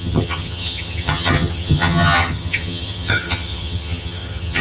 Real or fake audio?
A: fake